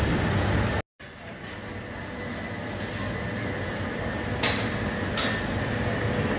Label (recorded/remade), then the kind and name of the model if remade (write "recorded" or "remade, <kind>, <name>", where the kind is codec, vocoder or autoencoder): recorded